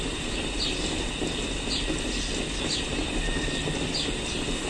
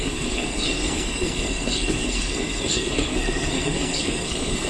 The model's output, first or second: second